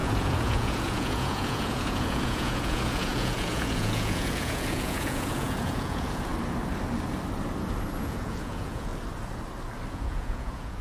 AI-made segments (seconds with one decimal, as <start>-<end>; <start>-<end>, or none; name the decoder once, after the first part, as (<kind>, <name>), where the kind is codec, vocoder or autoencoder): 0.0-6.3 (vocoder, Vocos); 8.0-8.9; 9.9-10.8